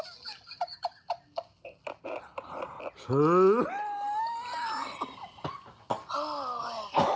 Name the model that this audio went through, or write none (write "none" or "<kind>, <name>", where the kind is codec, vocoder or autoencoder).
none